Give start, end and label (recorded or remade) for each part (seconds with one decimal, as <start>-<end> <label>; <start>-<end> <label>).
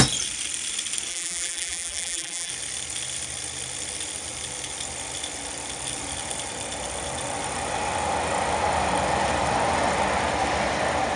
0.0-1.1 recorded; 1.1-2.5 remade; 2.5-11.2 recorded